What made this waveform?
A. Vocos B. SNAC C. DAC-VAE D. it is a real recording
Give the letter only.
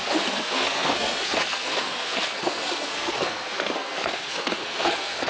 B